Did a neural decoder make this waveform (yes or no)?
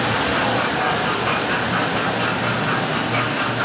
no